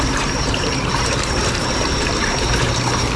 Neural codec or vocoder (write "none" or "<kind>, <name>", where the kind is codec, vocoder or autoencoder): vocoder, BigVGAN v2